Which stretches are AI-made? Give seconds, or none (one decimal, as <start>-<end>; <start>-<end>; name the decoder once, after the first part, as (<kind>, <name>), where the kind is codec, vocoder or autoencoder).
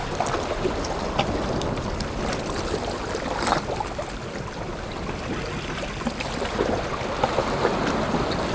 none